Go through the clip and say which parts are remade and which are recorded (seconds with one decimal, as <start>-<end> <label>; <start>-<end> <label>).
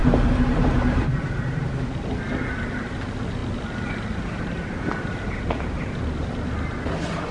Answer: 0.0-1.8 remade; 1.8-7.3 recorded